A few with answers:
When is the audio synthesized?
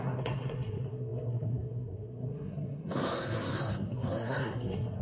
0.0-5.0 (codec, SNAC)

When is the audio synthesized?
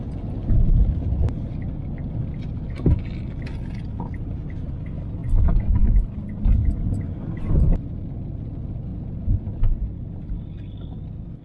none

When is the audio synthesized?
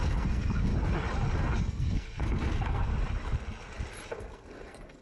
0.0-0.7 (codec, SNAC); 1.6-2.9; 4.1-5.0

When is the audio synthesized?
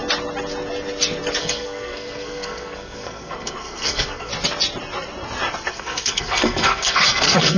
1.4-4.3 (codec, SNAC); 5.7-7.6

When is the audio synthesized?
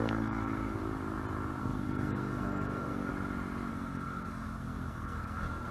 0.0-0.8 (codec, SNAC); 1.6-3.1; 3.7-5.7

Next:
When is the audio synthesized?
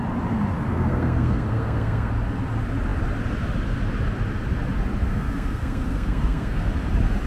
0.7-2.1 (codec, SNAC); 5.1-6.7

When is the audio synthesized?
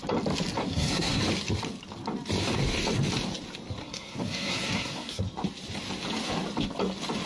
0.6-1.2 (codec, SNAC); 3.8-5.2